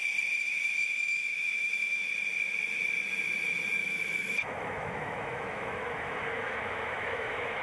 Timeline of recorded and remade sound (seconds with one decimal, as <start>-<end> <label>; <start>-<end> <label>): 0.0-0.4 recorded; 0.4-2.1 remade; 2.1-3.8 recorded; 3.8-7.6 remade